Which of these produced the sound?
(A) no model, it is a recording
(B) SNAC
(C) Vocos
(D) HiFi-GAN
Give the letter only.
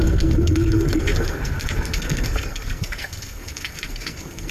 B